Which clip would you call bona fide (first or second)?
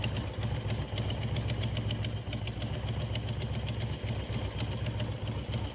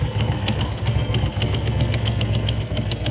first